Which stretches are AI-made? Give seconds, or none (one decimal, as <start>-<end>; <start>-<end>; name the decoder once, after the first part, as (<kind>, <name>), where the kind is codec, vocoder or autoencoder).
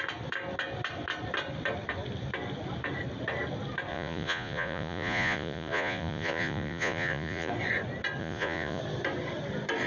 3.9-7.5 (vocoder, Vocos); 8.2-8.8